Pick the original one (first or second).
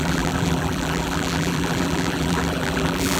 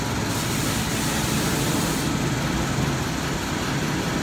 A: second